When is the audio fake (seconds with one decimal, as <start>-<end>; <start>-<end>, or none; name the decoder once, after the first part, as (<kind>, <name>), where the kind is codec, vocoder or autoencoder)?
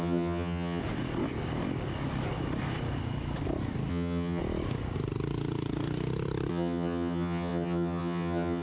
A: 0.0-0.8 (vocoder, HiFi-GAN); 3.9-4.4; 6.5-8.6